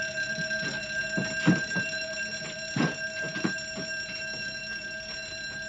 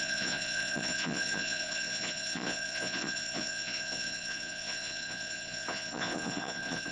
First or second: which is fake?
second